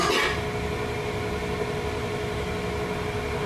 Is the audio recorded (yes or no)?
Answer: yes